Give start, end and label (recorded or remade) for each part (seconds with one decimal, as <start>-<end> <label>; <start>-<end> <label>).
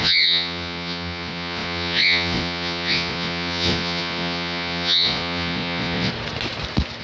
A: 0.0-6.1 remade; 6.1-7.0 recorded